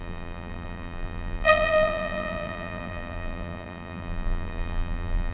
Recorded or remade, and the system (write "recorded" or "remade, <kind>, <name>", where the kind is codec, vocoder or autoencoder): remade, vocoder, BigVGAN v2